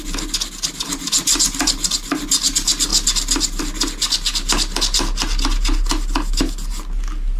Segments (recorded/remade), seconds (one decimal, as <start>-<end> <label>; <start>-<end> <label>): 0.0-7.4 recorded